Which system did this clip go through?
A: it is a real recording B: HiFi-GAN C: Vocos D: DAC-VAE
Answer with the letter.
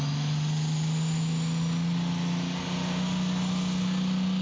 A